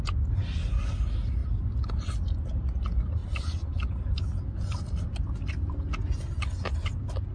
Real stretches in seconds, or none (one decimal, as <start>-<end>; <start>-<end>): 0.0-7.3